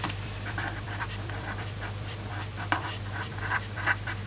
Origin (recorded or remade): remade